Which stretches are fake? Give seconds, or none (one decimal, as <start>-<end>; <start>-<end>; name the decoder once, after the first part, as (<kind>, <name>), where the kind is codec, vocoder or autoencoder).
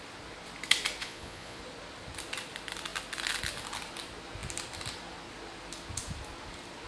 1.0-1.6 (vocoder, Vocos)